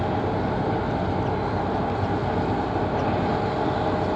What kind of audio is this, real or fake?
real